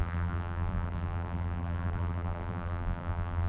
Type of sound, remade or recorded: remade